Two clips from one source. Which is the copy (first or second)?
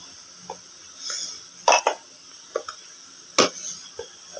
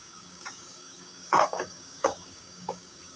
second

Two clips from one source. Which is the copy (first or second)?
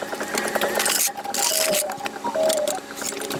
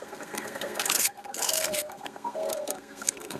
second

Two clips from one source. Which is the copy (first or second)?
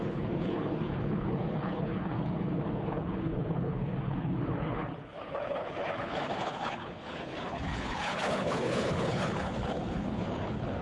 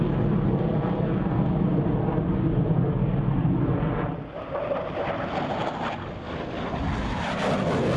first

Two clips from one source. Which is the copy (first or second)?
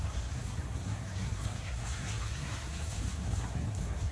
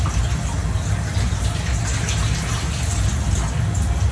first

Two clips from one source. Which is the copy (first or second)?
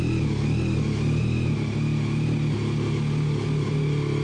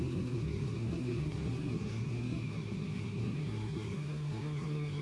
second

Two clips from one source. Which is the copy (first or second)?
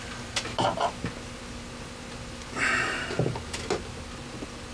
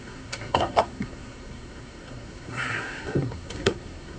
second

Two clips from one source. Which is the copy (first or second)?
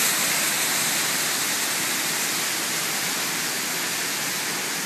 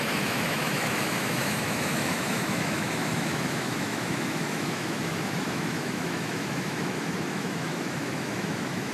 second